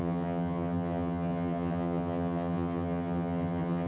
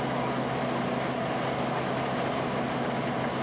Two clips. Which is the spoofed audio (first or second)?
first